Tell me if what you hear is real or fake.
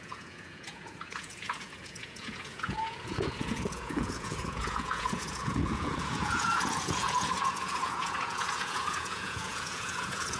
fake